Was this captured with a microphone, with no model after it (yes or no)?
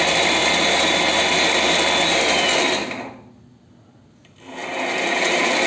yes